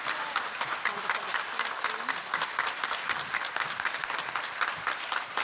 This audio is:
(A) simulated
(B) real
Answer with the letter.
A